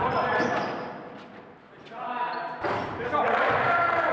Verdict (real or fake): real